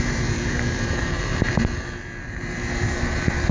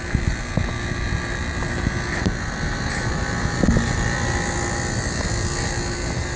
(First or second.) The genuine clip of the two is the second